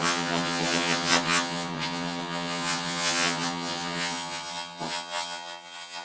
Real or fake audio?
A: fake